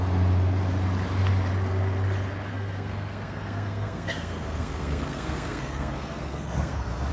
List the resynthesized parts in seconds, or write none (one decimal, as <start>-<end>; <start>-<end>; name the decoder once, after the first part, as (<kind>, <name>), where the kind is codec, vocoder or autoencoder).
2.5-7.1 (codec, SNAC)